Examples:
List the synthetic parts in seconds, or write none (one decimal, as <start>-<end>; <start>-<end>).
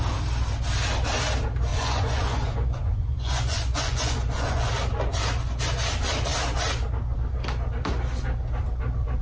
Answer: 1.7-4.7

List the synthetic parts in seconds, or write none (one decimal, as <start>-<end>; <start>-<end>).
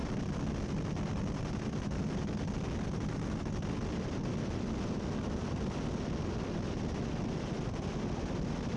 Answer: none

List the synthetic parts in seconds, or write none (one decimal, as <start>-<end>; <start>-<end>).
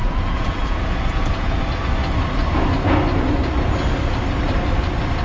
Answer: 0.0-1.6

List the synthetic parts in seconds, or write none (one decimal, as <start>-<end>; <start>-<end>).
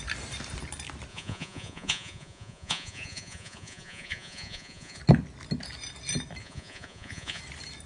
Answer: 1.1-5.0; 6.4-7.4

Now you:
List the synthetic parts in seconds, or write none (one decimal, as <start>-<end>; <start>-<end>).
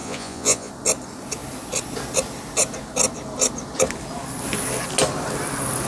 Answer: 0.0-0.7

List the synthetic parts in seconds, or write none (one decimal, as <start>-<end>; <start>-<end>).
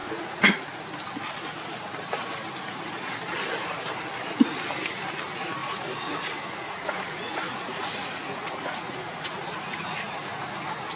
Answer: 0.0-0.5; 5.6-10.5